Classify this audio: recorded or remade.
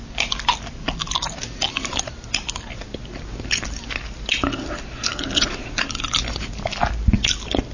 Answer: recorded